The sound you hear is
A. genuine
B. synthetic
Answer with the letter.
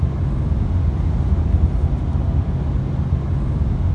A